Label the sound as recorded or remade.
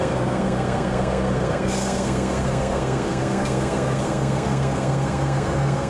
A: remade